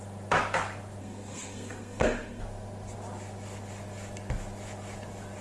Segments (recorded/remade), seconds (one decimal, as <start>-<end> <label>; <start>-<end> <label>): 0.0-1.0 recorded; 1.0-2.4 remade; 2.4-5.4 recorded